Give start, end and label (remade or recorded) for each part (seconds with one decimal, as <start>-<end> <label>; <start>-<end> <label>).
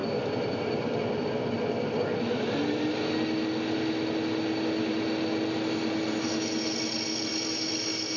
0.0-8.2 recorded